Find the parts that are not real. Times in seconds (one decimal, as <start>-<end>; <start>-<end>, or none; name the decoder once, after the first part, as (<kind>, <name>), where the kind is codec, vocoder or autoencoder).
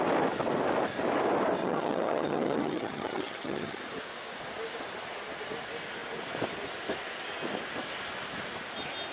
1.6-3.8 (vocoder, HiFi-GAN)